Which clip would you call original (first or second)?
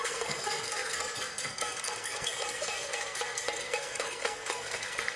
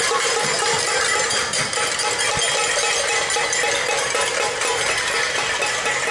second